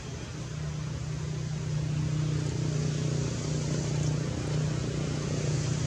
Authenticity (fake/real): real